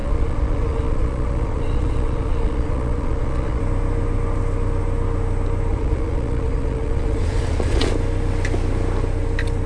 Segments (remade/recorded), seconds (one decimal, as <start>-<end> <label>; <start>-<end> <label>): 0.0-3.6 remade; 3.6-5.7 recorded; 5.7-7.9 remade; 7.9-9.7 recorded